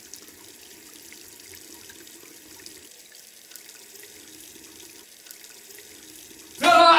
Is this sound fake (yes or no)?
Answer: no